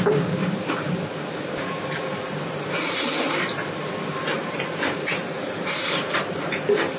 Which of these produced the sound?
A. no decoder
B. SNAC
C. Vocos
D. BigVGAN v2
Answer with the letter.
D